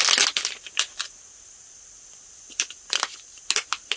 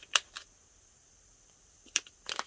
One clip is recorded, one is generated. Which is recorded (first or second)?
first